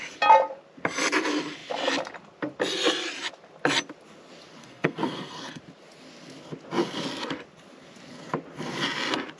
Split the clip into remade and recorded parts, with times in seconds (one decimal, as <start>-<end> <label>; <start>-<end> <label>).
0.0-4.6 recorded; 4.6-5.6 remade; 5.6-9.4 recorded